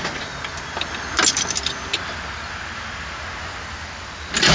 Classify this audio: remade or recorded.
recorded